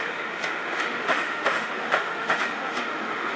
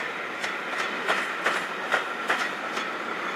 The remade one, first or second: first